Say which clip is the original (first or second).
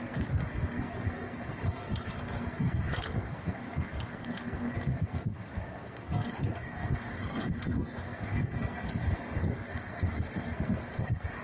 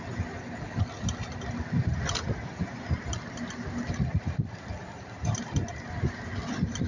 second